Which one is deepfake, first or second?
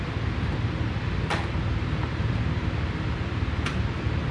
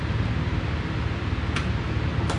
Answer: first